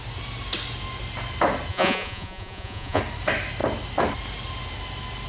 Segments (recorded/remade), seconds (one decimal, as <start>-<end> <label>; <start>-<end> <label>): 0.0-1.7 recorded; 1.7-3.0 remade; 3.0-5.3 recorded